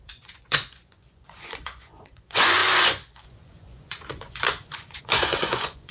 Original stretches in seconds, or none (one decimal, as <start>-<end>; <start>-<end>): none

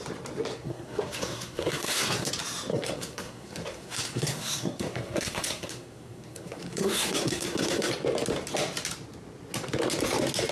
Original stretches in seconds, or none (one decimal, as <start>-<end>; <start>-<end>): 0.0-0.5; 2.3-2.7; 7.9-10.5

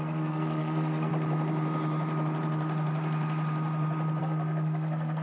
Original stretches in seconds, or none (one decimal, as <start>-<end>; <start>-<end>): 1.1-4.2

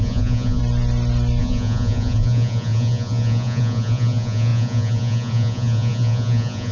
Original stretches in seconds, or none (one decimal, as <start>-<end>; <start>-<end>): 0.6-1.4

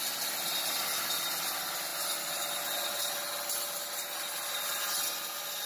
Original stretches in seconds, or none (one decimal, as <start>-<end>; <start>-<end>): 0.0-5.7

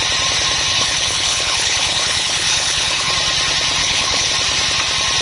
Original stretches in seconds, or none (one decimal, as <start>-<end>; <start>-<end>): 0.0-0.7; 3.1-3.8; 4.3-5.2